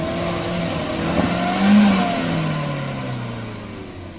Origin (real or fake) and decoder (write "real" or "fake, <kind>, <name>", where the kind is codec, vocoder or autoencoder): real